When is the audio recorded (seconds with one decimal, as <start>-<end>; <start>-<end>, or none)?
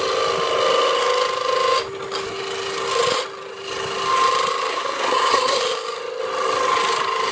0.0-4.7; 5.6-7.3